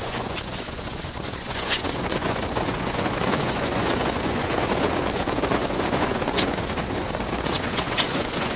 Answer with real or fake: fake